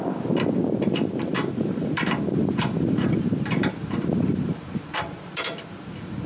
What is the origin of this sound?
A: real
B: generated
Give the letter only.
B